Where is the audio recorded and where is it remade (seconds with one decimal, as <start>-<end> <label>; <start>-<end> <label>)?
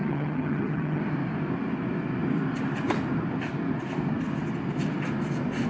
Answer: 0.0-1.0 remade; 1.0-5.7 recorded